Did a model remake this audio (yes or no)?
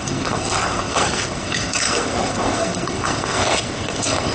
yes